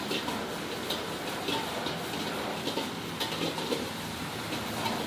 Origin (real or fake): real